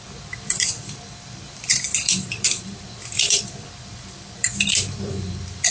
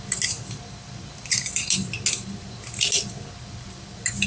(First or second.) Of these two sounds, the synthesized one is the first